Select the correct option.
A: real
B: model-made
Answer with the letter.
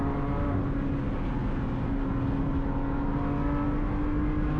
A